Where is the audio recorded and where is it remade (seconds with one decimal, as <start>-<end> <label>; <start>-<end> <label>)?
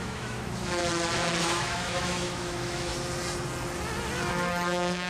0.0-0.8 remade; 0.8-1.4 recorded; 1.4-2.9 remade; 2.9-4.3 recorded; 4.3-5.1 remade